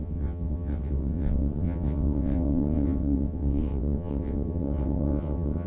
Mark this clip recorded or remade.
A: remade